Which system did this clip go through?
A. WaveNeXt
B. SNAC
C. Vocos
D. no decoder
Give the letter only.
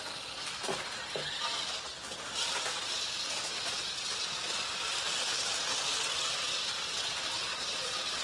D